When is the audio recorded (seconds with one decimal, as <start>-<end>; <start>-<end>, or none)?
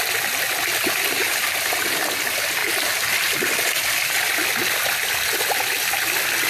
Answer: 0.0-6.5